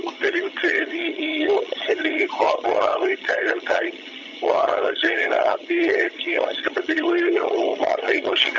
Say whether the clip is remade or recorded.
remade